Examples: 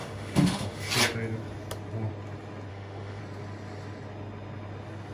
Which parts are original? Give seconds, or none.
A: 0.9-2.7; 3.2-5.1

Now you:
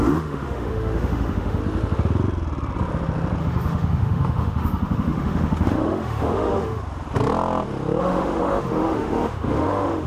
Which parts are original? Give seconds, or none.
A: 1.6-3.4; 6.8-8.0

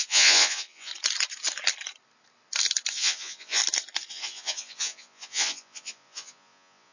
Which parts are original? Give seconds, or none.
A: 0.9-2.9; 3.6-4.1

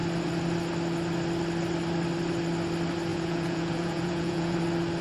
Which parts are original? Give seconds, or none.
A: 0.0-3.1; 4.6-5.0

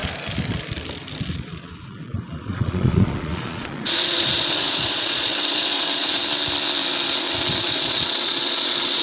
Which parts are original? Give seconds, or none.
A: 0.0-1.3; 6.2-7.6

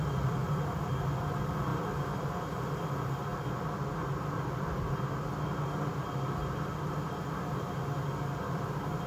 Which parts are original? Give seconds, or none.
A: 0.0-0.4; 1.0-1.7; 2.6-9.1

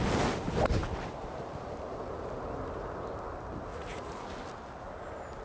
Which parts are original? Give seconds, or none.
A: 0.0-3.7; 4.3-5.4